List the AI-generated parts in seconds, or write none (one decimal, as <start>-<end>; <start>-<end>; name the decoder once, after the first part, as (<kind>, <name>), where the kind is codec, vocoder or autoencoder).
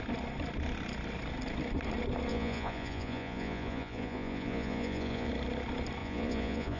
2.3-5.3 (vocoder, Vocos); 6.0-6.8